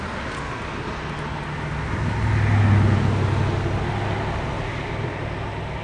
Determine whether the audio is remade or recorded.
recorded